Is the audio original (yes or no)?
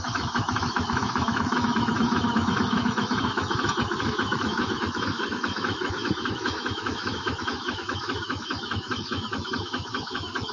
no